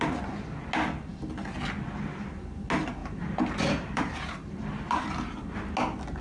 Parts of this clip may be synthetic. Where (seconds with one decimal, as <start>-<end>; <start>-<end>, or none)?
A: 3.0-5.5